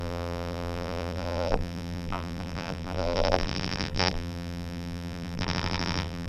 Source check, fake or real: fake